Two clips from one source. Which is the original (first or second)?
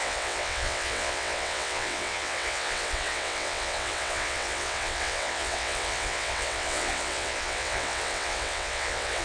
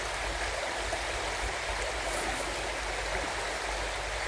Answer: second